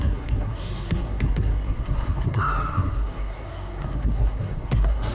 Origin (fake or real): fake